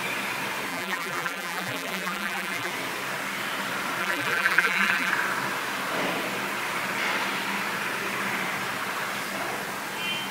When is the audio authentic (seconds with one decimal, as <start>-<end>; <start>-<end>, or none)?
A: 0.0-0.7; 2.7-4.0; 5.1-10.3